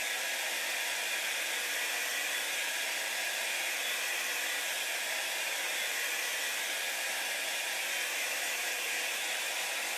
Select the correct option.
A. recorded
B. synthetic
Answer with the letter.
B